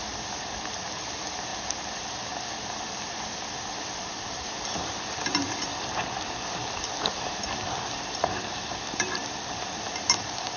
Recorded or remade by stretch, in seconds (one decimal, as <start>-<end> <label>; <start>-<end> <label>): 0.0-1.5 remade; 1.5-2.8 recorded; 2.8-5.7 remade; 5.7-6.7 recorded; 6.7-10.6 remade